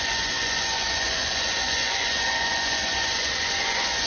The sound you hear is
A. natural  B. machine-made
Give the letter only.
B